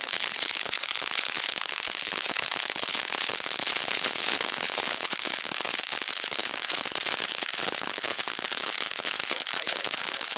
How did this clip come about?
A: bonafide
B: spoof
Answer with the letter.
B